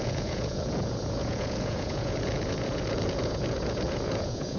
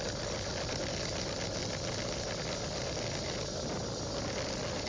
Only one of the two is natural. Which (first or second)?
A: second